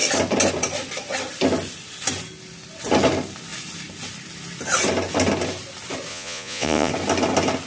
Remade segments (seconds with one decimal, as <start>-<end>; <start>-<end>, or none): 6.1-6.9